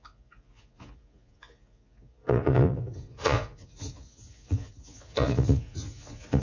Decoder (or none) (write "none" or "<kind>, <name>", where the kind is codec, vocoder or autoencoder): vocoder, Vocos